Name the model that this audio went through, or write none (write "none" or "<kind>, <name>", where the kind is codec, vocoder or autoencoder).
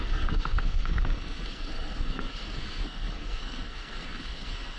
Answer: codec, SNAC